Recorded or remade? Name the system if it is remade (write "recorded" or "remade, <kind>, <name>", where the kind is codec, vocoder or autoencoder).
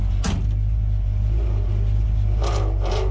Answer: recorded